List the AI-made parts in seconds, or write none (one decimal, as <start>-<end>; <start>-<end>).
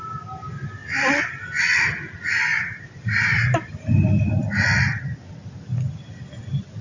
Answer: 2.5-3.9